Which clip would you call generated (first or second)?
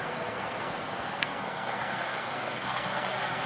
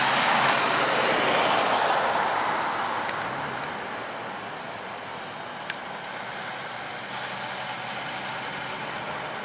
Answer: first